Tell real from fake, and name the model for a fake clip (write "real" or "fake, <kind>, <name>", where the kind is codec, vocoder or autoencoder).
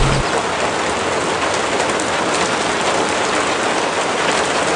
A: real